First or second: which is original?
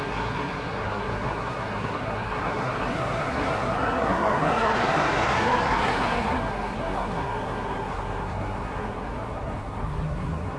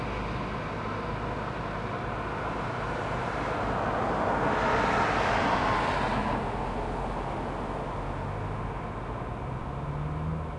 second